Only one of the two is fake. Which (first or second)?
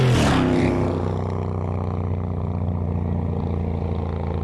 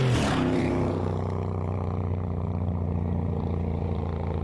second